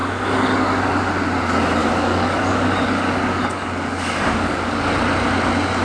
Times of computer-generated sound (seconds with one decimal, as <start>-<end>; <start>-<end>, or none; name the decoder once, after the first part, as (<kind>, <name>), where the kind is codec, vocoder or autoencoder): 0.0-1.0 (codec, DAC); 1.8-4.8